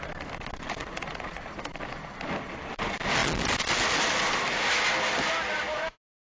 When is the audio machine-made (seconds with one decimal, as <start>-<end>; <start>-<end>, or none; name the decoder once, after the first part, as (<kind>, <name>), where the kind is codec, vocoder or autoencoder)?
0.8-1.6 (vocoder, Vocos)

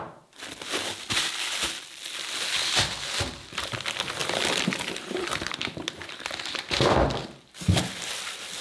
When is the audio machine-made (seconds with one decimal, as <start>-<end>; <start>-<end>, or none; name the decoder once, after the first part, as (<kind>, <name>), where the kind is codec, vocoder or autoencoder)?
4.2-5.8 (vocoder, BigVGAN v2)

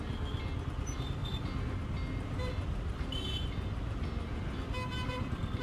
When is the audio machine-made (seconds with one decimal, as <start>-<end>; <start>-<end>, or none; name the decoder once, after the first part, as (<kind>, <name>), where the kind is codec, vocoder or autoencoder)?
none

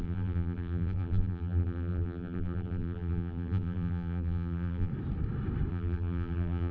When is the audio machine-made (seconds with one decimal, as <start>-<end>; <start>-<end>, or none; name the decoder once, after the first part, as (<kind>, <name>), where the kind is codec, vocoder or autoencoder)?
0.0-4.9 (vocoder, BigVGAN v2); 5.7-6.7